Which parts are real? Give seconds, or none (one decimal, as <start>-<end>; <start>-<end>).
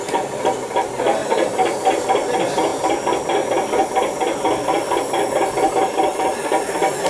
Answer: 0.0-7.1